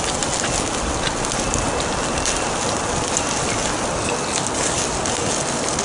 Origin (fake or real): real